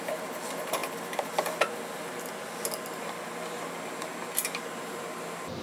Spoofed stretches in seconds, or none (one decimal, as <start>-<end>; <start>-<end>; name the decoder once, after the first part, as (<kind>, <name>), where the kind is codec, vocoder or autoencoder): none